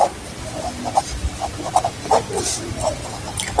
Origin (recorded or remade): recorded